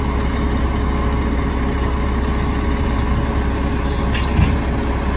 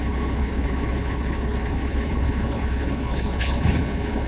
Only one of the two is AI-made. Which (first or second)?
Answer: second